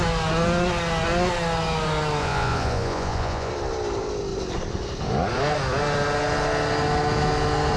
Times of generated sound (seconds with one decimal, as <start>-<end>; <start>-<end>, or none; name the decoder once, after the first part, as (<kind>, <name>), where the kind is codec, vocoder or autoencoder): 2.2-3.5 (vocoder, Vocos)